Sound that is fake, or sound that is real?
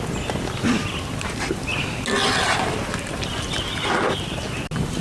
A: real